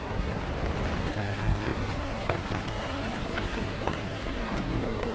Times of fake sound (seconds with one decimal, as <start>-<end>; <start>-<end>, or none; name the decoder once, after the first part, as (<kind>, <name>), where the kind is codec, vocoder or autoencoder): 0.0-0.4 (codec, SNAC); 1.0-5.1